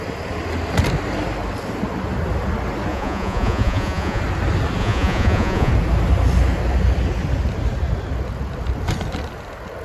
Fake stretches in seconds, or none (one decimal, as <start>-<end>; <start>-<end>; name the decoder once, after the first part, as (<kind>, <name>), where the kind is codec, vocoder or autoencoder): 2.9-4.2 (vocoder, Vocos); 4.8-5.7